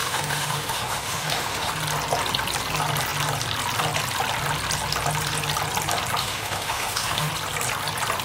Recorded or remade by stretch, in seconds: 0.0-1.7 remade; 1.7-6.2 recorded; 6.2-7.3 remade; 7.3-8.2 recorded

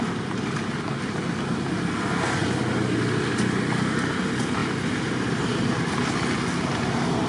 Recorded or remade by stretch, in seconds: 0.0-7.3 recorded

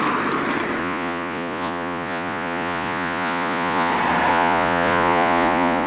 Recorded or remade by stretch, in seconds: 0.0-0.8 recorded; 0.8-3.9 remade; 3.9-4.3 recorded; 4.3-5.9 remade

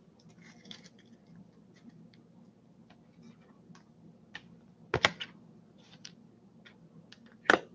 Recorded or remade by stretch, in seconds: 0.0-7.7 recorded